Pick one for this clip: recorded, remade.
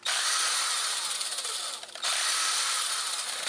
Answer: recorded